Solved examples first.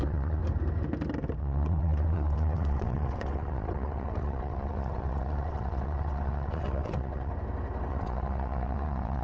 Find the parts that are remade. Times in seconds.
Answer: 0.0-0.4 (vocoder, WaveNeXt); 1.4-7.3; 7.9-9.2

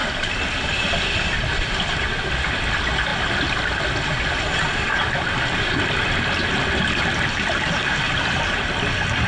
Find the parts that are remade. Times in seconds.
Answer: none

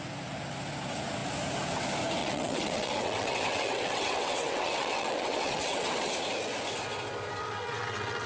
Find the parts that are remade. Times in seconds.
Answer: 2.2-6.1 (vocoder, WaveNeXt); 7.4-8.3

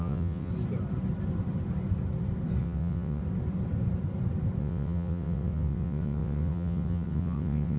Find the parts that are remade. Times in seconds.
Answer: 0.0-0.5 (vocoder, WaveNeXt); 2.6-3.2; 4.6-7.8

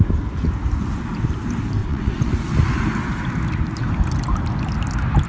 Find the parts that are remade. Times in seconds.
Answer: 1.8-2.3 (vocoder, WaveNeXt)